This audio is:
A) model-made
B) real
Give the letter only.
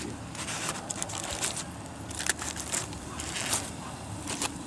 B